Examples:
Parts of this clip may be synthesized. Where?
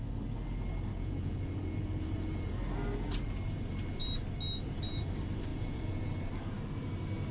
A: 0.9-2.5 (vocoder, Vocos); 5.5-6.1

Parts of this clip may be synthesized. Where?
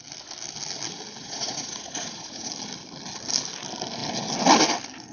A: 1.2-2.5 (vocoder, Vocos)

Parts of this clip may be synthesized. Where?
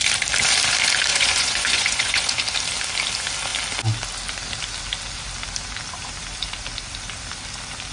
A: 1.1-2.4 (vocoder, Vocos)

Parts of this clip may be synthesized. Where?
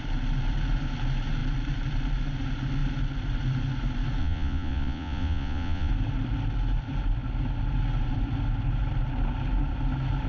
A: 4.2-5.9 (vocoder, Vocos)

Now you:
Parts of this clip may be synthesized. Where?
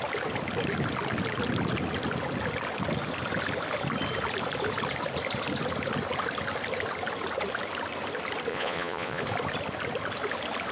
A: 8.5-9.2 (vocoder, Vocos)